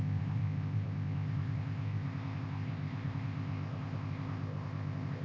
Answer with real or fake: fake